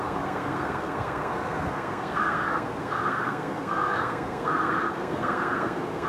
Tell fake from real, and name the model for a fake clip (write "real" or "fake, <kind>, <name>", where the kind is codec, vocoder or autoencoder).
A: fake, codec, SNAC